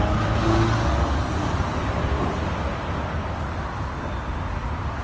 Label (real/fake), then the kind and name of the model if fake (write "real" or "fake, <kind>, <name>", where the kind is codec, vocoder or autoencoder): real